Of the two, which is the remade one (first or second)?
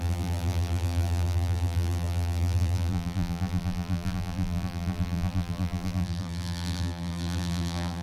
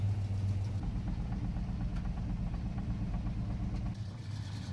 first